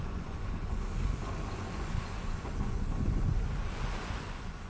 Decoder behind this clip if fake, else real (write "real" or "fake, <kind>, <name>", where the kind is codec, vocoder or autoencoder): fake, vocoder, Vocos